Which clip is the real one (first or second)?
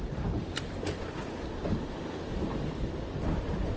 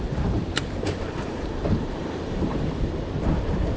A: first